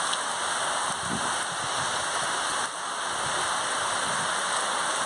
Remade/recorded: recorded